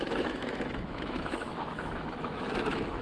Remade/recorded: remade